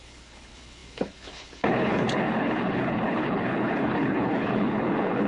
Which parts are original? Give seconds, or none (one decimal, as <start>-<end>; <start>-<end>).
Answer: none